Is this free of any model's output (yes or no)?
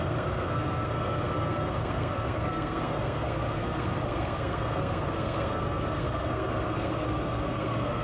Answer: no